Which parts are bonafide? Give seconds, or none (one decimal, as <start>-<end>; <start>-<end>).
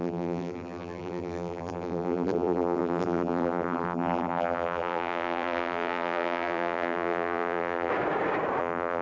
7.9-8.6